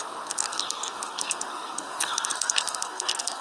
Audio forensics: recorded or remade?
remade